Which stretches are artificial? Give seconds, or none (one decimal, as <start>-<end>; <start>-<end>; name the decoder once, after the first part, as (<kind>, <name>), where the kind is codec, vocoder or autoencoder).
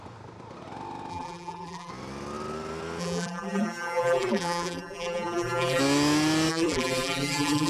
1.1-1.9 (vocoder, BigVGAN v2); 3.0-5.8; 6.5-7.7